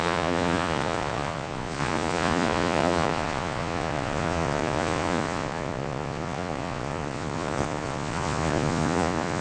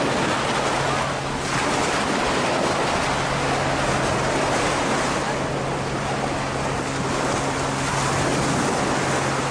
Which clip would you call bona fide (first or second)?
second